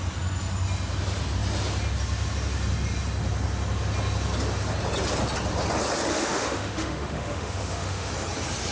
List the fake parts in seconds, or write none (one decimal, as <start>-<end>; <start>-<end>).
6.1-8.1